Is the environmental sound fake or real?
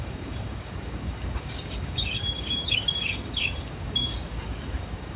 fake